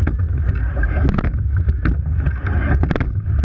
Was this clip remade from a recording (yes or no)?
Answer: no